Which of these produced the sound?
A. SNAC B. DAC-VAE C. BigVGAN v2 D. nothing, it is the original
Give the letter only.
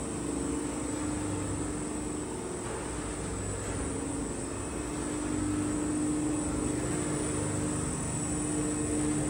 D